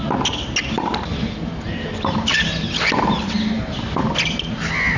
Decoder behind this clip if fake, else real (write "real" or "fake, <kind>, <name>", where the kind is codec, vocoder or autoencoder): real